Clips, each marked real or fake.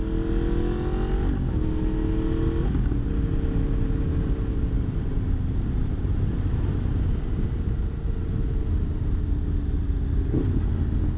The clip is real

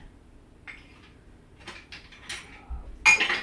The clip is real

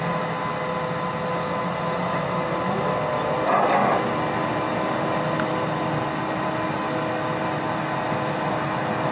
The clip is real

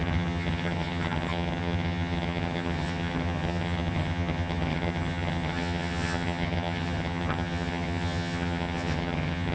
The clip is fake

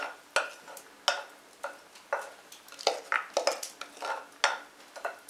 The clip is real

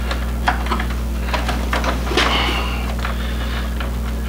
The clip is real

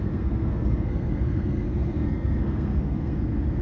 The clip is fake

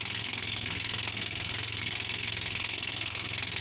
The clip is fake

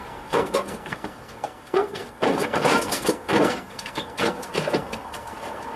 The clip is fake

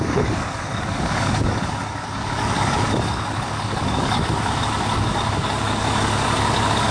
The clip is fake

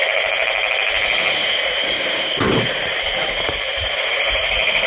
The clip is fake